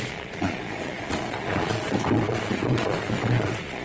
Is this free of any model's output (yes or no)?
no